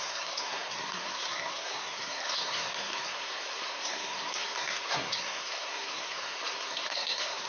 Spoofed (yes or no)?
yes